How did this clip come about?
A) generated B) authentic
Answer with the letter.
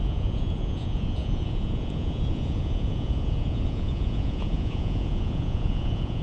A